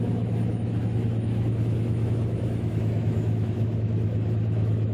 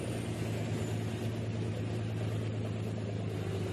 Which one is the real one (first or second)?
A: second